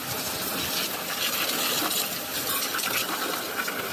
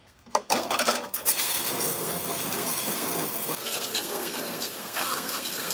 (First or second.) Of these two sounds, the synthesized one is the second